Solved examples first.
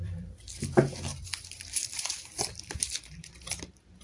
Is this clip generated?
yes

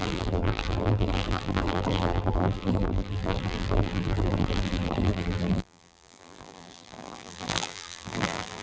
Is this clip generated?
yes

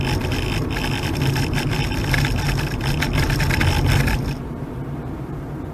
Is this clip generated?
no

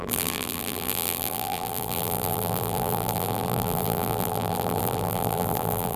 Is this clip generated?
yes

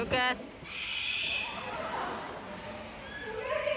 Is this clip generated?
no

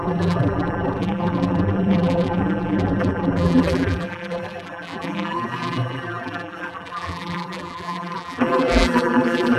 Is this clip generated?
yes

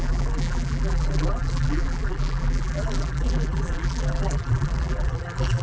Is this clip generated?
yes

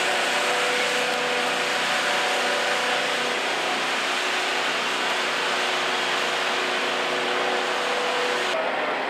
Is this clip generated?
no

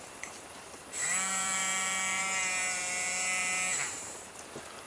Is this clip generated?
yes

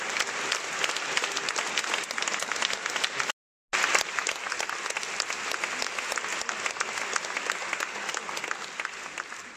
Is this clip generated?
no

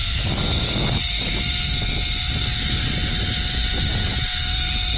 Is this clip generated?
no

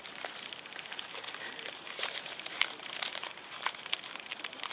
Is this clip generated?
yes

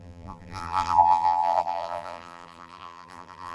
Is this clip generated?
yes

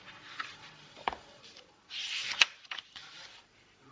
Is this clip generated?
yes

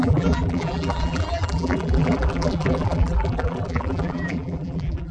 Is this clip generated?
yes